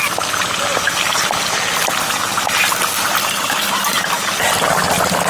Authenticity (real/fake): real